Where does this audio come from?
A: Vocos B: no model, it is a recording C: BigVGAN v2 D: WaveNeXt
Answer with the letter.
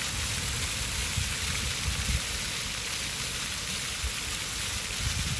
B